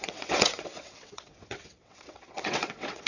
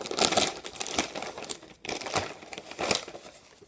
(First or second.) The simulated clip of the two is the first